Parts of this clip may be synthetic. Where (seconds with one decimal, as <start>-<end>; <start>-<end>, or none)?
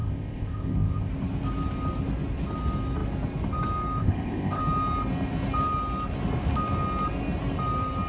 0.0-1.1; 4.0-4.6